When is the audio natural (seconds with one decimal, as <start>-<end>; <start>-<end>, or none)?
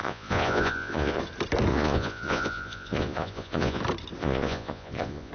1.2-1.7; 3.8-4.2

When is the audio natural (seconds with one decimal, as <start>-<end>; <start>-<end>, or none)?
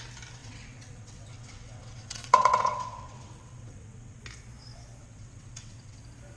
0.0-0.4; 4.2-5.0; 6.0-6.4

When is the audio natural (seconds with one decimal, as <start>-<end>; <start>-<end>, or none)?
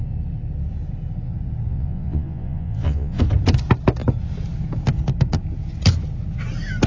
0.0-1.7; 3.2-6.9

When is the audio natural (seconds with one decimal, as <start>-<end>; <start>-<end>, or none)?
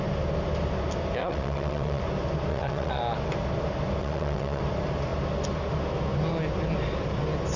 0.0-1.2; 2.0-2.5; 3.0-4.0; 4.6-7.6